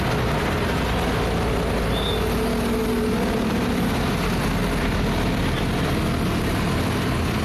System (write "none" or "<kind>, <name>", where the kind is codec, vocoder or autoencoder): none